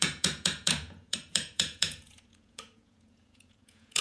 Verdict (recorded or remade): remade